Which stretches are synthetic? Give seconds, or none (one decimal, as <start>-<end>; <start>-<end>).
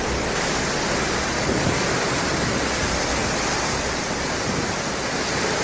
none